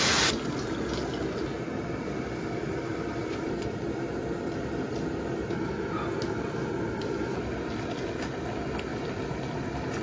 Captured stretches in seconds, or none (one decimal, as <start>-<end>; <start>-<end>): 0.0-8.9; 9.6-10.0